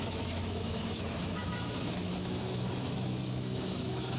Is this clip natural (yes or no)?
no